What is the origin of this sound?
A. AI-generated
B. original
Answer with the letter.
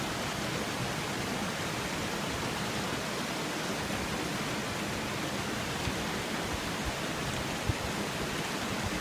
B